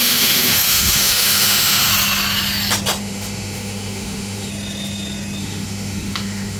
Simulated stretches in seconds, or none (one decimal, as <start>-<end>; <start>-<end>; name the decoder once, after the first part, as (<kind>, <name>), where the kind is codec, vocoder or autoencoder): 0.0-1.9 (autoencoder, DAC-VAE); 3.0-4.5; 5.4-6.6